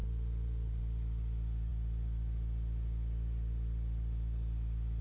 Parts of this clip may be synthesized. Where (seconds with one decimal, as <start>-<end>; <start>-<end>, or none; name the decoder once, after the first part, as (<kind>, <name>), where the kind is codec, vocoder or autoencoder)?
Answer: 0.0-0.8 (vocoder, BigVGAN v2)